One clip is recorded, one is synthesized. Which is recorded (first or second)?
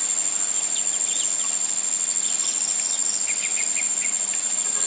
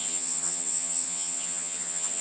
first